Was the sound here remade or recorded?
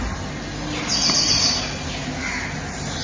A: recorded